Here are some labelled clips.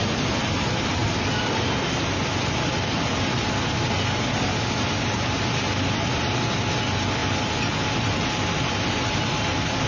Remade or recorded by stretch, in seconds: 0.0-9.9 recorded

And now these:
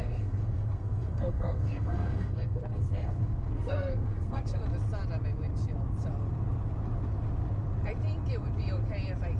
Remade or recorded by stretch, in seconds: 0.0-4.6 remade; 4.6-9.4 recorded